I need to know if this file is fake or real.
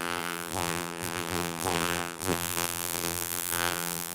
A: fake